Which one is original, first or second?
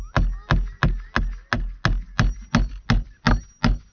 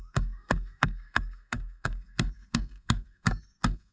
first